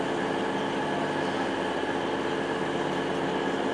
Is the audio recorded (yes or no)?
yes